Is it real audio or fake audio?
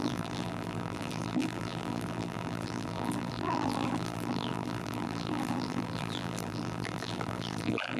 fake